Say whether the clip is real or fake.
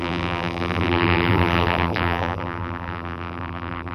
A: fake